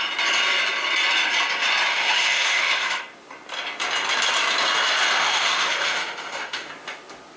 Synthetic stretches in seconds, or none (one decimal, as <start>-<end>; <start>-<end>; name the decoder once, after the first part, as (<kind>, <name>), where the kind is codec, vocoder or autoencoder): 1.9-3.0 (autoencoder, DAC-VAE); 5.2-6.7